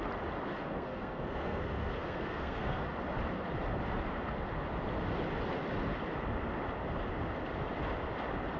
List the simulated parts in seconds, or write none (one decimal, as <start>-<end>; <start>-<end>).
0.6-2.9